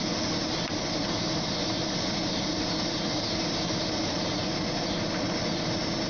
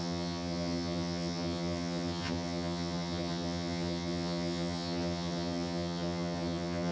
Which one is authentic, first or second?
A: first